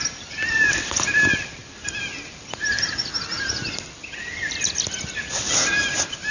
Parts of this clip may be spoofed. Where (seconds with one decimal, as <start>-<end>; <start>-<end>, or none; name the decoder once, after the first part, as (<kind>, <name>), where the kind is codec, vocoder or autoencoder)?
none